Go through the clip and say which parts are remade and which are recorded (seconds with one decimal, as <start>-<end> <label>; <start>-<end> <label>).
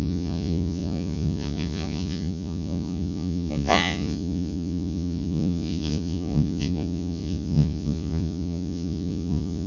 0.0-9.7 remade